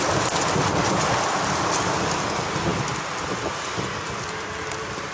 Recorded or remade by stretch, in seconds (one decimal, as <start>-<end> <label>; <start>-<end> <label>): 0.0-2.7 recorded; 2.7-5.1 remade